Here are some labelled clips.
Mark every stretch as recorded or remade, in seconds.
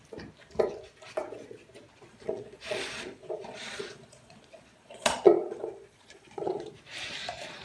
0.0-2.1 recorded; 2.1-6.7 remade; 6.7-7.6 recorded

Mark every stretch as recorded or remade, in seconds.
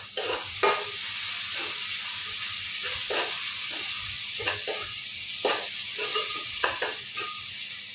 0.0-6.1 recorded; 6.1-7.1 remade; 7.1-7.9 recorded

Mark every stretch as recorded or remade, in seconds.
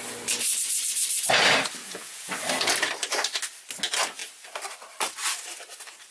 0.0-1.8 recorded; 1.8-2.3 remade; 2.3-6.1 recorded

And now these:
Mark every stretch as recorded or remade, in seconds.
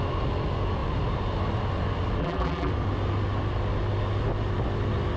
0.0-2.2 recorded; 2.2-2.7 remade; 2.7-5.2 recorded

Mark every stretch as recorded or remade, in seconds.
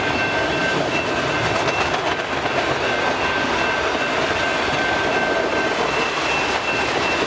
0.0-7.3 recorded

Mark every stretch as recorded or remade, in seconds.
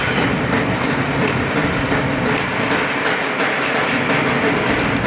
0.0-1.1 remade; 1.1-5.1 recorded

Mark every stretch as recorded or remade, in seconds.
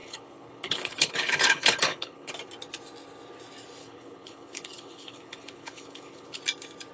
0.0-2.3 remade; 2.3-3.8 recorded; 3.8-6.4 remade; 6.4-6.9 recorded